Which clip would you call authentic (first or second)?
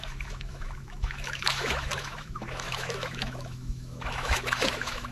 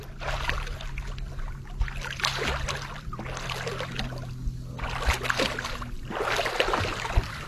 second